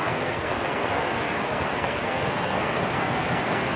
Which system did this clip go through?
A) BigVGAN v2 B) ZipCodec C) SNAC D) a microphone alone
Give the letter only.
C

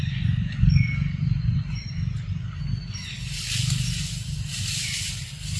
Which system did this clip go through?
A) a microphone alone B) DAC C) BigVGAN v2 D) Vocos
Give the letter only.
A